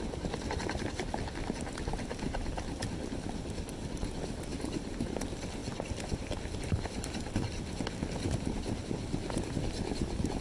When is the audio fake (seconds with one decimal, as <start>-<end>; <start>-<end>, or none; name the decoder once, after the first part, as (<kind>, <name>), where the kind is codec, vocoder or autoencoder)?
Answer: none

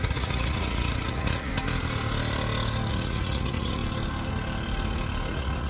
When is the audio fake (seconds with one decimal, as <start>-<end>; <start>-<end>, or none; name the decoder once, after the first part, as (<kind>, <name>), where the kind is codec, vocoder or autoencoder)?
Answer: 0.0-1.5 (vocoder, Vocos); 2.9-3.8; 5.3-5.7